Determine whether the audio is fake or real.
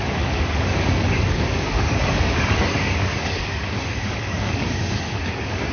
fake